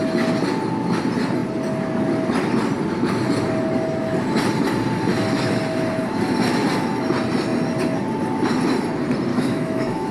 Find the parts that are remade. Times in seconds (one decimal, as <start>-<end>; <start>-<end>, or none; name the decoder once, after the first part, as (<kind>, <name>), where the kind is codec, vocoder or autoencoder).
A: 9.3-10.1 (autoencoder, DAC-VAE)